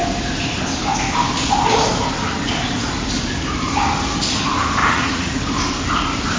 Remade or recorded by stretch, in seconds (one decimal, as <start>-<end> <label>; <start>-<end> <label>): 0.0-4.8 recorded; 4.8-5.3 remade; 5.3-6.4 recorded